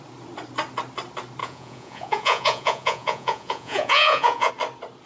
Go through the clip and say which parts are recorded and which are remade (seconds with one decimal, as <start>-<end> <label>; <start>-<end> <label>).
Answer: 0.0-1.4 recorded; 1.4-4.5 remade; 4.5-5.1 recorded